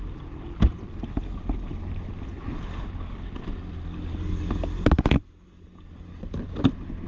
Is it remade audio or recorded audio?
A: recorded